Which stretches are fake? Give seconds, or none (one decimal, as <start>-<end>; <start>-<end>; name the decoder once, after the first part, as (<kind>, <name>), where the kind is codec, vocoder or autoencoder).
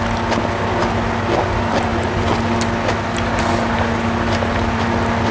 none